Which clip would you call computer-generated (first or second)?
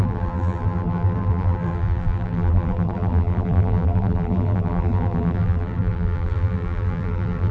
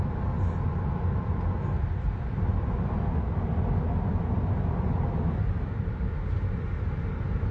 first